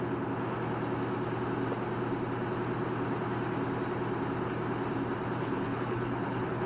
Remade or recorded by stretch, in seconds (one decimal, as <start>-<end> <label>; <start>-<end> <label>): 0.0-5.4 recorded; 5.4-6.7 remade